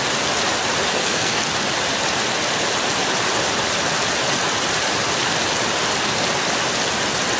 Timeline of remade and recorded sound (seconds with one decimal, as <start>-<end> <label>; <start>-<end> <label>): 0.0-0.9 recorded; 0.9-1.4 remade; 1.4-7.4 recorded